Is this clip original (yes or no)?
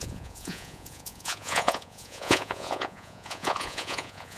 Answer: no